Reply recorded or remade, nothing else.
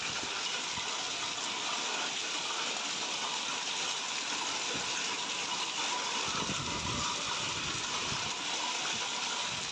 recorded